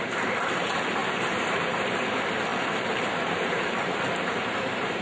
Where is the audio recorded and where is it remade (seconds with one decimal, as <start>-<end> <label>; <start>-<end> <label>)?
0.0-1.0 recorded; 1.0-1.8 remade; 1.8-2.5 recorded; 2.5-5.0 remade